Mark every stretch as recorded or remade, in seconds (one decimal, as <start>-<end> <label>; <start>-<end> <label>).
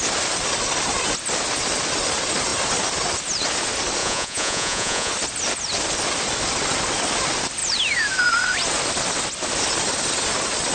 0.0-4.0 recorded; 4.0-5.1 remade; 5.1-10.7 recorded